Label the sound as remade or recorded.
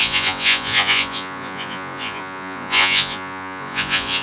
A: remade